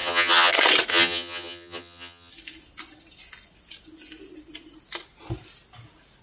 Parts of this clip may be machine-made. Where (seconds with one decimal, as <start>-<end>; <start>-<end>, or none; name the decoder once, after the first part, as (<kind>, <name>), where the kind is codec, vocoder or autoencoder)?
0.0-0.5 (vocoder, HiFi-GAN); 0.9-2.3